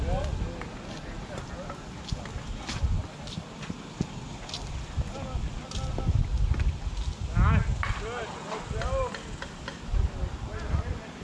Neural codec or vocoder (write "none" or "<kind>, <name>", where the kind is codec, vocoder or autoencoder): none